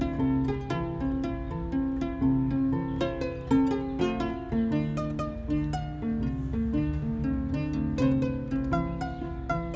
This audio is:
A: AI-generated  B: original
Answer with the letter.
B